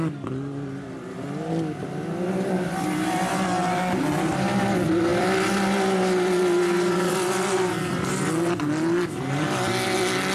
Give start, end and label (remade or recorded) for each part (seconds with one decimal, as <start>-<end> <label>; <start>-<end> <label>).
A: 0.0-5.1 recorded; 5.1-8.5 remade; 8.5-10.3 recorded